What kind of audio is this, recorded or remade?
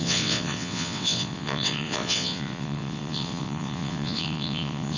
remade